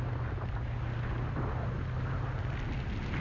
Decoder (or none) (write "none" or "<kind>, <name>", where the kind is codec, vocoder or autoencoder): none